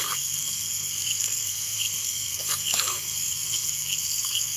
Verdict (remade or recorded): remade